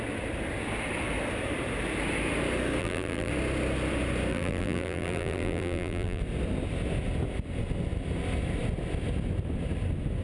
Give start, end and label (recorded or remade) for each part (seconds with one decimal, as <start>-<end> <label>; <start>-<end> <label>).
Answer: 0.0-2.8 recorded; 2.8-3.3 remade; 3.3-4.3 recorded; 4.3-6.2 remade; 6.2-10.2 recorded